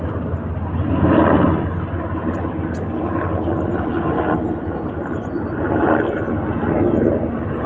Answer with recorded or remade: recorded